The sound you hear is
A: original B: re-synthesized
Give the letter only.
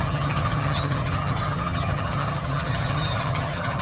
B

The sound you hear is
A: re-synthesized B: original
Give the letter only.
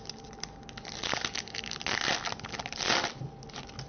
B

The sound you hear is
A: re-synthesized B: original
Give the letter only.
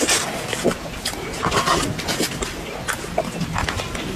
B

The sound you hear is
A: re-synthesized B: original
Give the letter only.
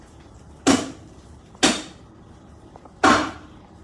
B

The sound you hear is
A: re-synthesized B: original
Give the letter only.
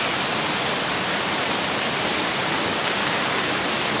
B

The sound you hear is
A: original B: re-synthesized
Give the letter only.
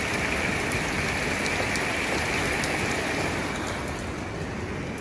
A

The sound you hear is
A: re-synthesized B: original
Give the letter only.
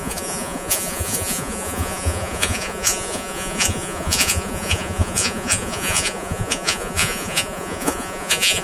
A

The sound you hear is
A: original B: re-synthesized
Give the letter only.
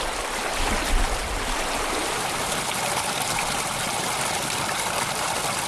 A